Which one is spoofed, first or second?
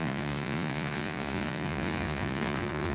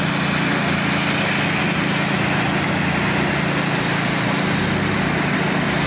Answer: first